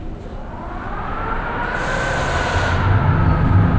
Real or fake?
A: real